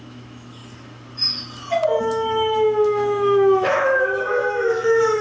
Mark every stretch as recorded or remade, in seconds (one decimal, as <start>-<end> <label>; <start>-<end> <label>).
0.0-0.6 remade; 0.6-2.0 recorded; 2.0-5.2 remade